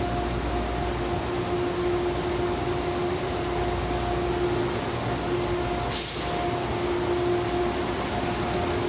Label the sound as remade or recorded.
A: recorded